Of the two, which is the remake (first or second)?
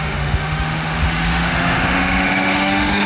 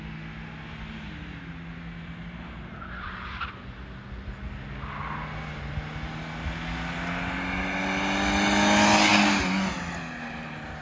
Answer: first